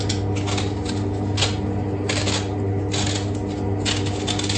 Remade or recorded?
recorded